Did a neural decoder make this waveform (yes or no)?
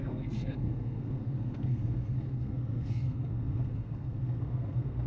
yes